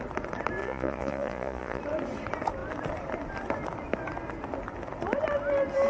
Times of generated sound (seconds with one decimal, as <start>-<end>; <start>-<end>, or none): 0.6-1.8

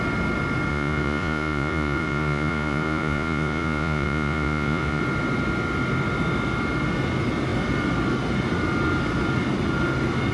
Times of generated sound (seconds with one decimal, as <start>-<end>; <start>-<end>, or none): 0.7-5.0